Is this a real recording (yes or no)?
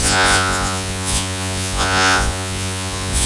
no